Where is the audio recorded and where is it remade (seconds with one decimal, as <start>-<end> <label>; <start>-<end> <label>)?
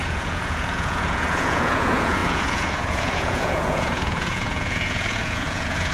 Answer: 0.0-5.9 remade